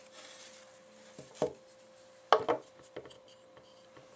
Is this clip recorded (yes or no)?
yes